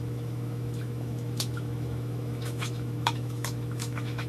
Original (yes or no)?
no